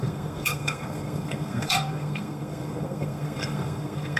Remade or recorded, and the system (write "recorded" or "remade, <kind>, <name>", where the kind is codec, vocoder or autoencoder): remade, codec, SNAC